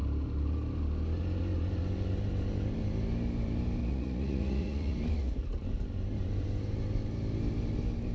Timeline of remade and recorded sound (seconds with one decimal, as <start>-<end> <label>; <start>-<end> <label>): 0.0-3.8 recorded; 3.8-5.0 remade; 5.0-8.1 recorded